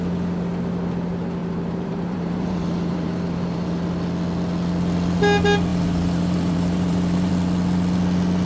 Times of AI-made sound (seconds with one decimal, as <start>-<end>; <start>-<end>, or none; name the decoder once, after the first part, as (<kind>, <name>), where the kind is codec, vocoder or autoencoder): 1.4-3.7 (vocoder, BigVGAN v2); 5.7-7.3